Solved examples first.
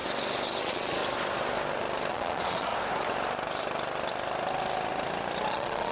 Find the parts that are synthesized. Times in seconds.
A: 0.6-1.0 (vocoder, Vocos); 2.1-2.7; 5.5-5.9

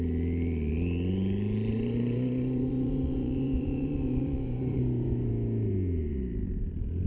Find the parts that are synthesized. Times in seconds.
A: 1.7-5.3 (vocoder, Vocos)

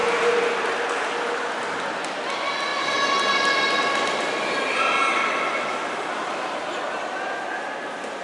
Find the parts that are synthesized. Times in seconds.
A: none

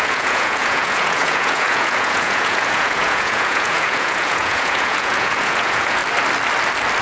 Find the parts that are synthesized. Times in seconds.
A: 0.0-6.0 (vocoder, Vocos)

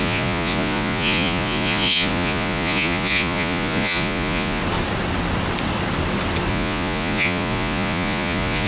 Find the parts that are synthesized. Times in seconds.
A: 0.0-4.6 (vocoder, Vocos); 6.5-8.7